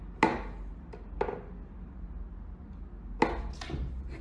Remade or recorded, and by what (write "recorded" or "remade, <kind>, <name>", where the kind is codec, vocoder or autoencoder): recorded